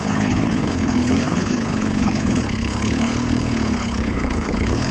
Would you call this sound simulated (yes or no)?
yes